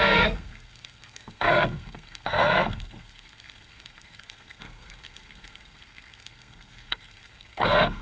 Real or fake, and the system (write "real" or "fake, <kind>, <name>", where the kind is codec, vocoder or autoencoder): fake, codec, SNAC